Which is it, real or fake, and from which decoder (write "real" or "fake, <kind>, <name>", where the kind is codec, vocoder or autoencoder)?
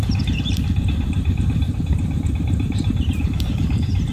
fake, vocoder, BigVGAN v2